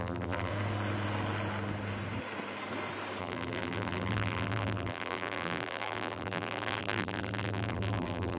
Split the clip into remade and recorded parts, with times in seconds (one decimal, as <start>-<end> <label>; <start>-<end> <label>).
0.0-0.5 remade; 0.5-3.2 recorded; 3.2-8.4 remade